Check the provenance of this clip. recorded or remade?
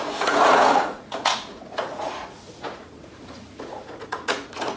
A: remade